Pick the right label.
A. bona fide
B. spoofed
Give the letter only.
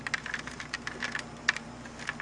A